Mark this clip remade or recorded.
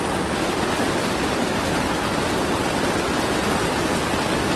recorded